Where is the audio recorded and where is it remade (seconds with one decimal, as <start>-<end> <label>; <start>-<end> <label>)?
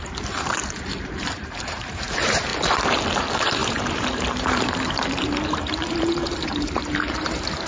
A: 0.0-2.5 remade; 2.5-3.2 recorded; 3.2-7.7 remade